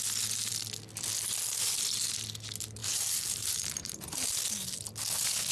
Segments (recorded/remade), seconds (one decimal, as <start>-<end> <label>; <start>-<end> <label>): 0.0-2.8 recorded; 2.8-4.3 remade; 4.3-5.5 recorded